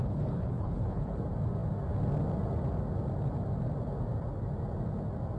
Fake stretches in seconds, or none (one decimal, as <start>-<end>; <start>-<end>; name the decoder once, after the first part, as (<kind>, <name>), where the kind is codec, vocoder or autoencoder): 0.0-1.2 (codec, HILCodec)